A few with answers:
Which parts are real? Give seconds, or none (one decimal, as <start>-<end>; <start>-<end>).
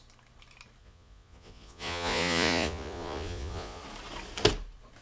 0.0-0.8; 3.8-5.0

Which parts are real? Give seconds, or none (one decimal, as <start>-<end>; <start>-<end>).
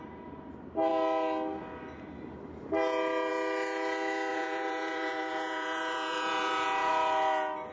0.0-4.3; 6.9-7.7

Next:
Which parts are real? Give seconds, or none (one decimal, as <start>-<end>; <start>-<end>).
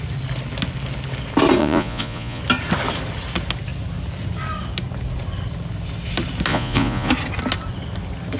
0.0-1.6; 2.4-6.5; 7.1-8.4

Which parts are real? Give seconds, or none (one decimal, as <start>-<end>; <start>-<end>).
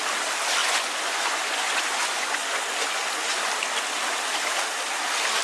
0.0-0.6; 3.4-5.4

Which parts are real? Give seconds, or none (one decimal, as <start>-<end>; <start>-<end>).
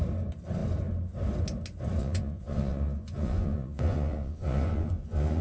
0.0-2.0